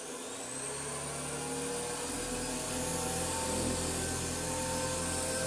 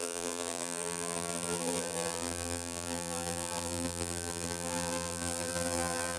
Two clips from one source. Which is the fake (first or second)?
second